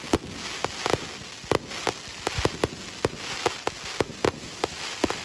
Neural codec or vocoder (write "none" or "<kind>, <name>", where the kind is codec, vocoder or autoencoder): none